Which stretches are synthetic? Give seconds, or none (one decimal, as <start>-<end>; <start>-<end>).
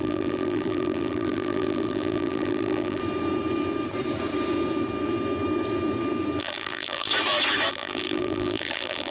0.0-3.0; 6.4-7.1; 7.7-9.1